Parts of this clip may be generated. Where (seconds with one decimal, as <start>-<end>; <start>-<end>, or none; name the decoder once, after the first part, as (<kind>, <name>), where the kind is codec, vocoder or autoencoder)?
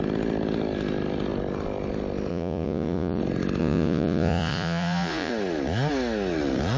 2.3-3.2 (vocoder, Vocos); 3.6-5.3